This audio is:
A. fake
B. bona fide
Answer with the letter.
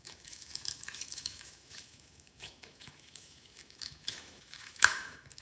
A